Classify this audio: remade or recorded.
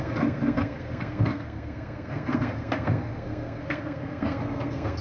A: remade